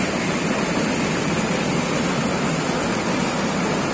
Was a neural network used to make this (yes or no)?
no